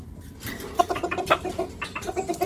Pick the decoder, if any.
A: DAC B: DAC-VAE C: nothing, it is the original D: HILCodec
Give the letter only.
C